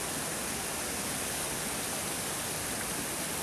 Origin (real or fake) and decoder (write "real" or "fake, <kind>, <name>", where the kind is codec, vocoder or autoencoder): real